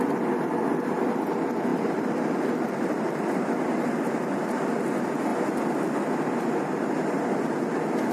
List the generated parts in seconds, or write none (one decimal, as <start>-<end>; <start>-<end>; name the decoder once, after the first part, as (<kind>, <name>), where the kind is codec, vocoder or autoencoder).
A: 1.7-3.4 (vocoder, BigVGAN v2)